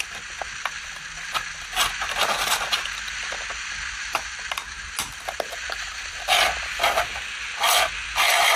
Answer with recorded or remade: recorded